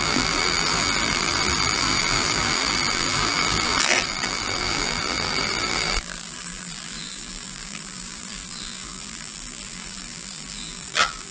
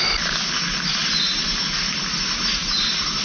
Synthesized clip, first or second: first